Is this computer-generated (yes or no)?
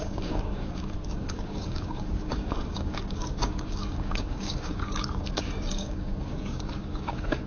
yes